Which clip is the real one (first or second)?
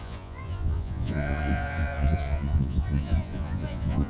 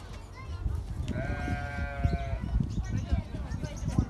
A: second